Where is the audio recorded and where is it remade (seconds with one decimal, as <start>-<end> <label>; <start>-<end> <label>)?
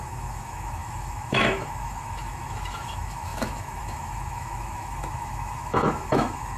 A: 0.0-6.6 remade